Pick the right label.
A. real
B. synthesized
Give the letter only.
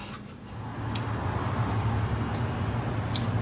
A